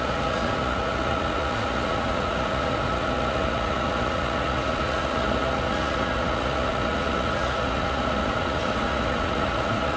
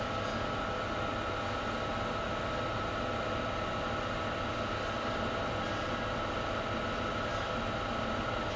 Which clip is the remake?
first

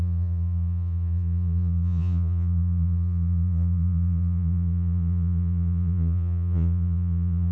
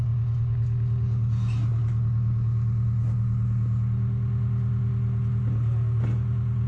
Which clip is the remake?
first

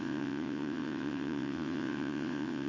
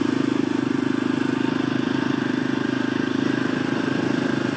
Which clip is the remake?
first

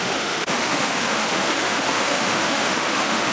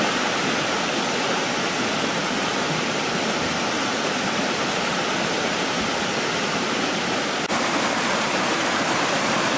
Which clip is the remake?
first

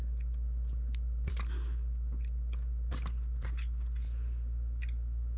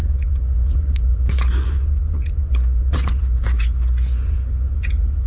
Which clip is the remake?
second